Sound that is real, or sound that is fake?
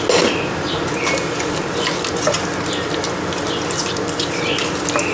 real